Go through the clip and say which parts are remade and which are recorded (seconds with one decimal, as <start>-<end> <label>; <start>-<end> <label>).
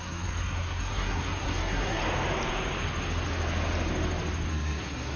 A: 0.0-2.0 remade; 2.0-4.5 recorded; 4.5-5.2 remade